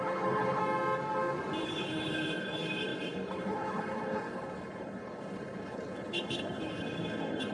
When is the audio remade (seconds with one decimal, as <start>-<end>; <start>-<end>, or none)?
0.0-0.6; 1.6-7.5